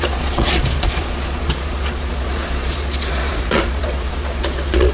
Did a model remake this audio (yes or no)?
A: yes